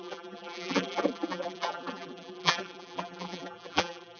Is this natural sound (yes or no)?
no